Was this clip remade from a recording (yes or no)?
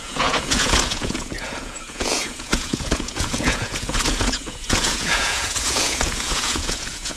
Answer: yes